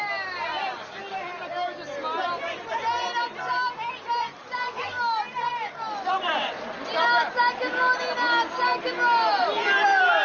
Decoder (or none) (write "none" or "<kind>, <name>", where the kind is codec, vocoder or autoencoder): none